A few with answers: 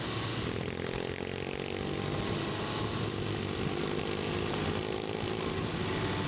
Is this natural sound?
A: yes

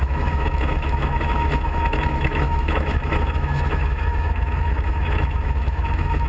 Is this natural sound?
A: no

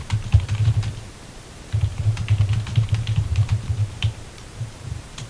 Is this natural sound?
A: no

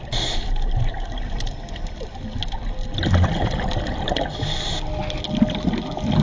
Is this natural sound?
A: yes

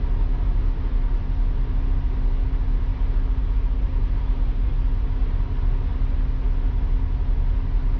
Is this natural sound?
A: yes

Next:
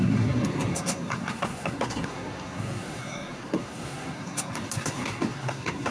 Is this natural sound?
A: no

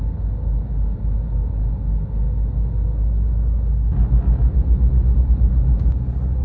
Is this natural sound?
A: yes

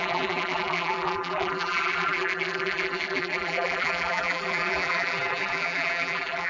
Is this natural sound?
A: no